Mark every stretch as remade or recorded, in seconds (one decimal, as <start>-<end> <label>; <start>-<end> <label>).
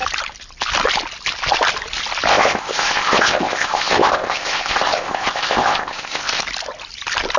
0.0-2.3 recorded; 2.3-6.4 remade; 6.4-7.4 recorded